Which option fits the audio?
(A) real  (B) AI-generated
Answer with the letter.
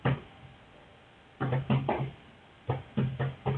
A